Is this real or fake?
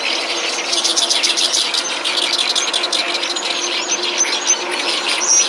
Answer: real